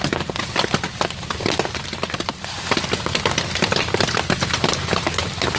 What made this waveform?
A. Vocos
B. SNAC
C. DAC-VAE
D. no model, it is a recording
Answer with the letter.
D